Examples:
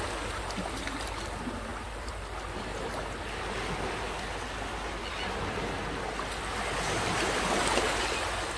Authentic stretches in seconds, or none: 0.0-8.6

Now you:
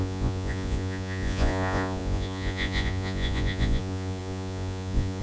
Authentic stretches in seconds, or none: none

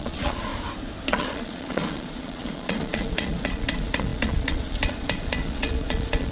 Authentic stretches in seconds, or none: 0.5-1.1